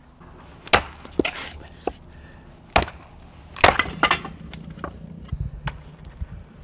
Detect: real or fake real